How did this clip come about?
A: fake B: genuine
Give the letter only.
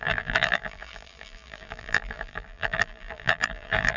A